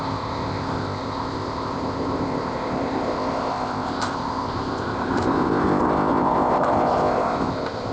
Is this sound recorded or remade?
remade